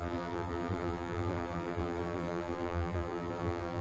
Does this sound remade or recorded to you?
remade